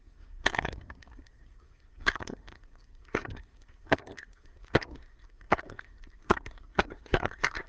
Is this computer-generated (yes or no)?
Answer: yes